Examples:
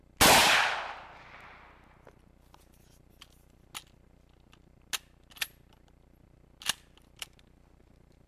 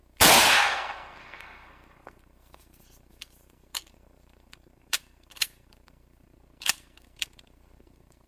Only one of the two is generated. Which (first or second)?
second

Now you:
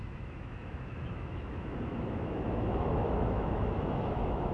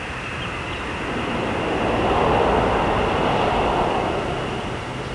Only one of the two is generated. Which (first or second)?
first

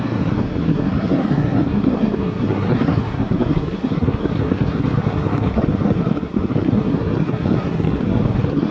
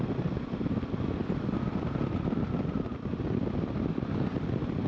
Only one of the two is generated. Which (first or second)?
first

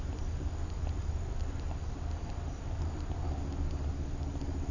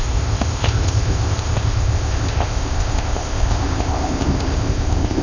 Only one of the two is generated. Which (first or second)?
second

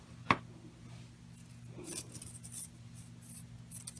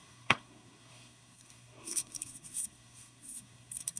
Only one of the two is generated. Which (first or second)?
second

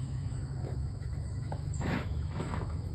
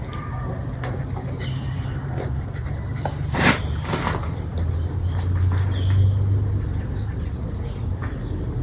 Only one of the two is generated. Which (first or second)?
first